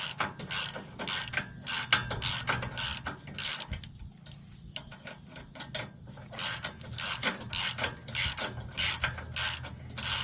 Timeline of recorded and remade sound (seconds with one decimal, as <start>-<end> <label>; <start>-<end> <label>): 0.0-10.2 recorded